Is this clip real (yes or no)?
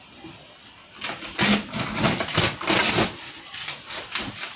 yes